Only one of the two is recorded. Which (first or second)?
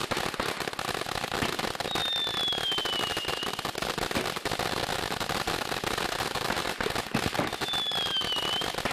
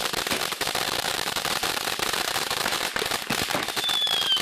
first